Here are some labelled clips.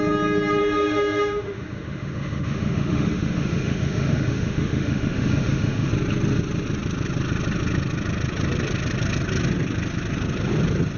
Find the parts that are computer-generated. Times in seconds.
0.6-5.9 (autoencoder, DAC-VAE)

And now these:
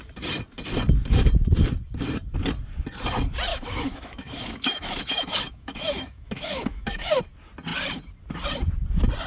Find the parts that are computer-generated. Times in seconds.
3.5-7.2 (autoencoder, DAC-VAE)

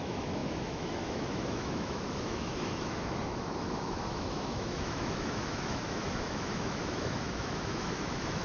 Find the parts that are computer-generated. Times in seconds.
0.0-8.4 (autoencoder, DAC-VAE)